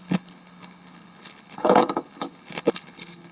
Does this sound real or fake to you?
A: fake